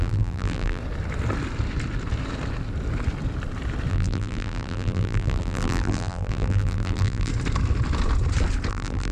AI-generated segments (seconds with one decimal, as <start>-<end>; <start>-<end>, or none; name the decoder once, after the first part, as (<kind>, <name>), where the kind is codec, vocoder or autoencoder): 0.0-0.8 (vocoder, BigVGAN v2); 3.9-7.3; 8.7-9.1